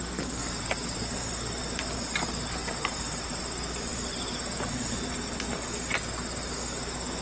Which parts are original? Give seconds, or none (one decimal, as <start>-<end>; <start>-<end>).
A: 0.0-0.4; 1.0-2.6; 3.4-3.9; 6.1-7.2